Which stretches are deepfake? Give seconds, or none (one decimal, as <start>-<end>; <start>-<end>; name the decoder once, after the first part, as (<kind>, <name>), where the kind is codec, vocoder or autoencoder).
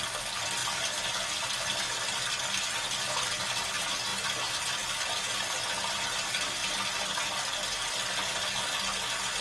none